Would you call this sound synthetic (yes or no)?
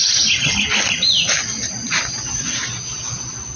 no